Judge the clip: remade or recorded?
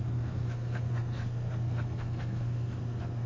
remade